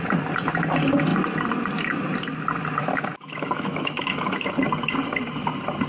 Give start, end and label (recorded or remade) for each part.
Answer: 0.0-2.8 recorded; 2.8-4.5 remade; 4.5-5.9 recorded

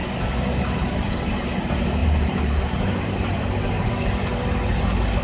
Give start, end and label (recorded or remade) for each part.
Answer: 0.0-1.5 remade; 1.5-2.0 recorded; 2.0-3.5 remade; 3.5-5.2 recorded